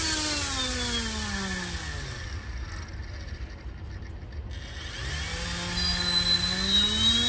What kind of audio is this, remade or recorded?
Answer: recorded